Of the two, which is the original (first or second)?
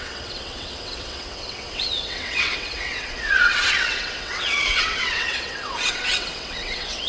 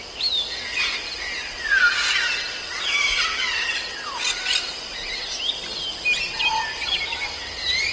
second